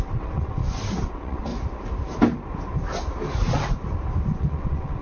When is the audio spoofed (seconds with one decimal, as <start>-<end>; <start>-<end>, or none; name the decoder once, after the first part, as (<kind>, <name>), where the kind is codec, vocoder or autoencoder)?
0.0-0.6 (vocoder, WaveNeXt); 1.1-1.5; 4.4-5.0